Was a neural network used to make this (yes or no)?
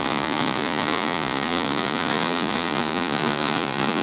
yes